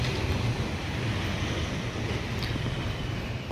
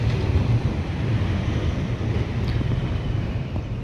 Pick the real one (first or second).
first